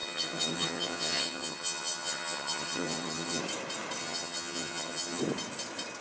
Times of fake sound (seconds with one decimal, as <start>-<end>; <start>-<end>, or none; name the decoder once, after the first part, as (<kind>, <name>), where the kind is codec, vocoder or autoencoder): 0.0-3.4 (vocoder, HiFi-GAN); 4.0-5.2